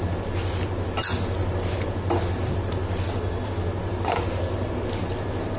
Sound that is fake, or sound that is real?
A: real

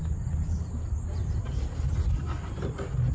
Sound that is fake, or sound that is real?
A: real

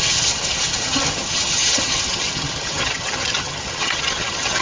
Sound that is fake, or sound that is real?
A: fake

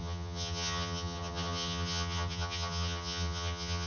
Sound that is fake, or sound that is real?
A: fake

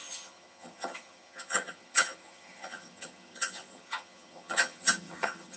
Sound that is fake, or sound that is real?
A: fake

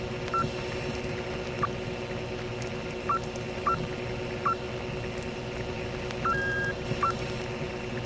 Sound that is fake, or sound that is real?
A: real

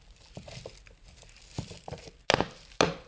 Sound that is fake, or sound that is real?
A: real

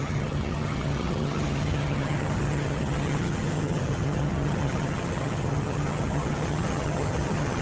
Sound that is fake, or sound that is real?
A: fake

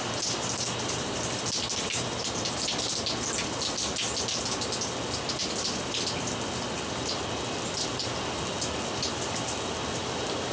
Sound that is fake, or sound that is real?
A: real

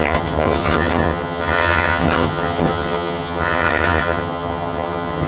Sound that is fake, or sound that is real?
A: fake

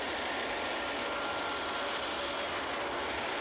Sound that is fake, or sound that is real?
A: real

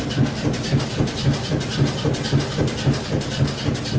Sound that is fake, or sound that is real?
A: real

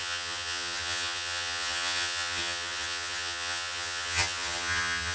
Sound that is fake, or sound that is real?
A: fake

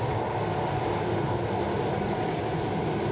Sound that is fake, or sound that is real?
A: real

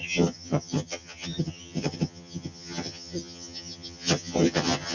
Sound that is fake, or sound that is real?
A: fake